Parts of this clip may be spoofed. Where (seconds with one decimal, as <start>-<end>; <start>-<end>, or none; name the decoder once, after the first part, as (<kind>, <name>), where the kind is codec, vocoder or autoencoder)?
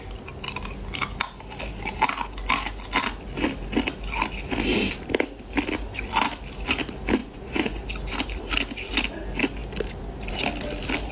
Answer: 7.2-7.8 (vocoder, Vocos)